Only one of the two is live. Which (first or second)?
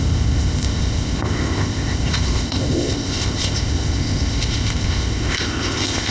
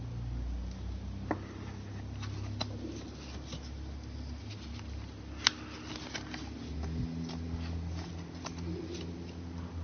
second